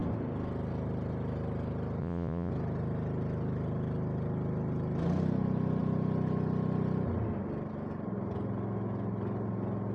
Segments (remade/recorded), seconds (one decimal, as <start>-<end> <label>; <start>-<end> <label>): 0.0-2.0 recorded; 2.0-2.5 remade; 2.5-9.9 recorded